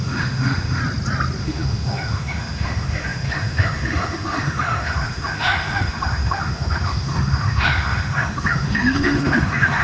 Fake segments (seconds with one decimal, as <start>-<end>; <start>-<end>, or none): 0.0-0.8; 1.4-9.8